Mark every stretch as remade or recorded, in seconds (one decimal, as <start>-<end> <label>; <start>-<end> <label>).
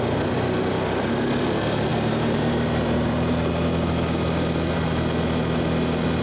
0.0-1.9 recorded; 1.9-3.5 remade; 3.5-6.2 recorded